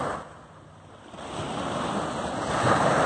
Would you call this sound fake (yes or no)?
no